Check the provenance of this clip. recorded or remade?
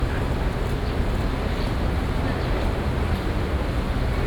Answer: recorded